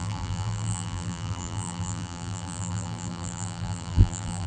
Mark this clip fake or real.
fake